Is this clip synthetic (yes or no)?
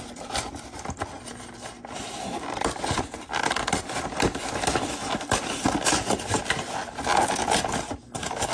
no